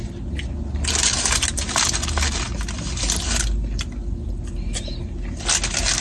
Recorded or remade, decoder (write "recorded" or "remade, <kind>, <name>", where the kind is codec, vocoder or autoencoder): recorded